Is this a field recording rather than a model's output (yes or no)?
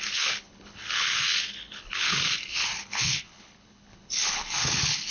no